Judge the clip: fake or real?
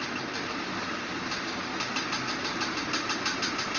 real